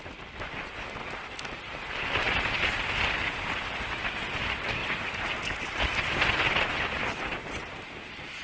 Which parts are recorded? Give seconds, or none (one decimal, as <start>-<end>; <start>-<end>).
0.0-8.4